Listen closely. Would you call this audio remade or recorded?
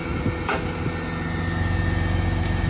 recorded